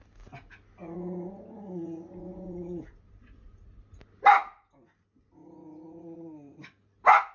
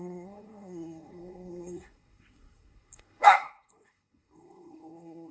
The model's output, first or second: second